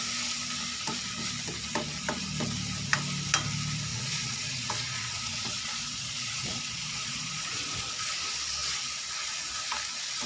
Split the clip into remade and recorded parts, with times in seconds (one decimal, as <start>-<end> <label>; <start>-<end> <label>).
0.0-3.9 recorded; 3.9-7.9 remade; 7.9-10.3 recorded